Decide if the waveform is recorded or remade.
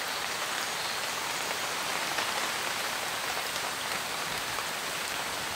recorded